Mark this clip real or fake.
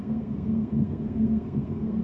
fake